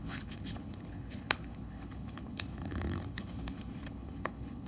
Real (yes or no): no